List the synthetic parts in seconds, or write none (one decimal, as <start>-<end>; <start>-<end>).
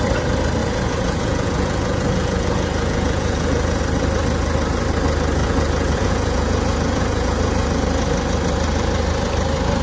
0.6-3.8; 5.4-7.8